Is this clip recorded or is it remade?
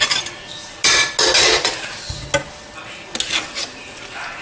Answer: recorded